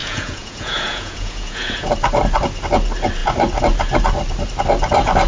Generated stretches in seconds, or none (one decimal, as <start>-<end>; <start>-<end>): 0.0-1.9